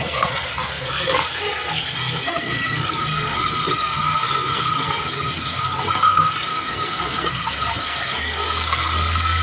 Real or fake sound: fake